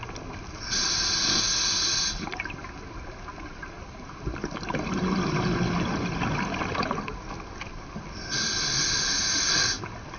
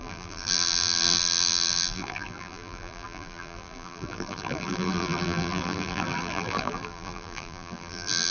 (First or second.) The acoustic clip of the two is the first